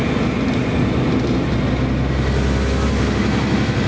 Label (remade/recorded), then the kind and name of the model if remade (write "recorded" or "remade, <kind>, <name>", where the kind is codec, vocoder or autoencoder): recorded